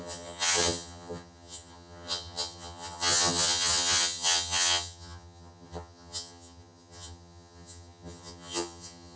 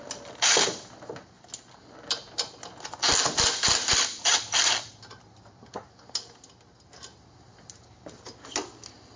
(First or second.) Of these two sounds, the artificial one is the first